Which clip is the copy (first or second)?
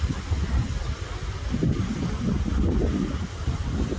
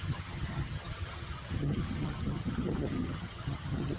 second